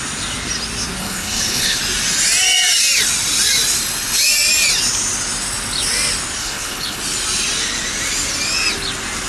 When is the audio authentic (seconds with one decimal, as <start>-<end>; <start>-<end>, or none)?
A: 0.0-1.0; 1.8-6.4; 7.0-9.3